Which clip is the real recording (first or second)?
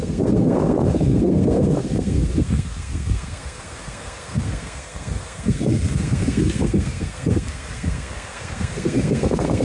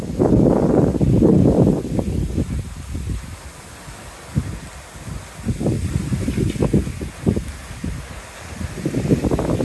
second